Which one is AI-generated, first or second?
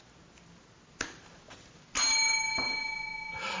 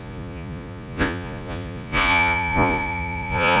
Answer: second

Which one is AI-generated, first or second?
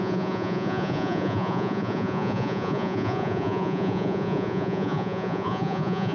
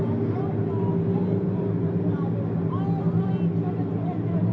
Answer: first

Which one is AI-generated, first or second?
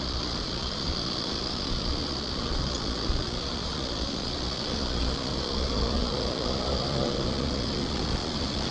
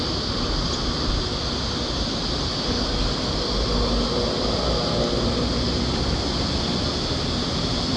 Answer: first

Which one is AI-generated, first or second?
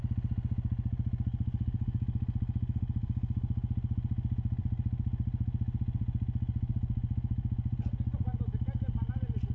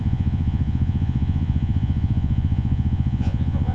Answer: second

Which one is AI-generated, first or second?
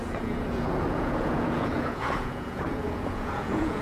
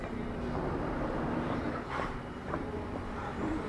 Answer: first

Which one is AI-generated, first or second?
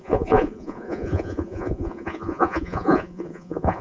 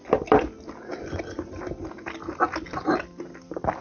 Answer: first